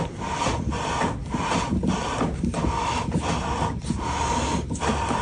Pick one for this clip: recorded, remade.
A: recorded